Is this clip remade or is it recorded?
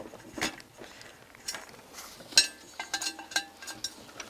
recorded